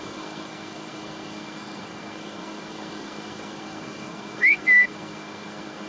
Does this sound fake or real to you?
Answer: fake